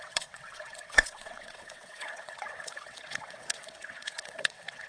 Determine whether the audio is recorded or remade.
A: remade